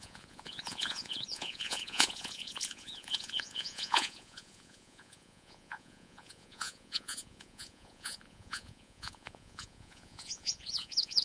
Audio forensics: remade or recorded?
remade